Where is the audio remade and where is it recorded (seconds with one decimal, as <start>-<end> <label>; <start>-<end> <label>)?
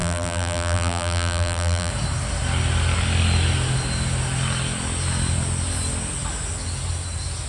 0.0-1.9 remade; 1.9-7.5 recorded